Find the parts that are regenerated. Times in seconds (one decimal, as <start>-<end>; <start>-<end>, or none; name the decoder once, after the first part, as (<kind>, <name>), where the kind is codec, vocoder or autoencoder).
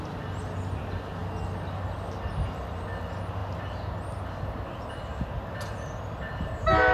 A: none